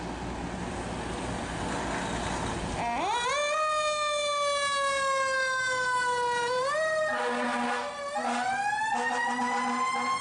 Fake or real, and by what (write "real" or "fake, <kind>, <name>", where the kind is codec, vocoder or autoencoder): real